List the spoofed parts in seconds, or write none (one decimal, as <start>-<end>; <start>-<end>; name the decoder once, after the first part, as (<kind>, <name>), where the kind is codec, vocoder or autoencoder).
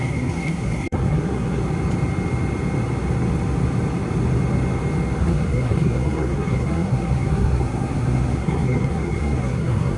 0.0-1.6 (codec, SNAC); 5.2-10.0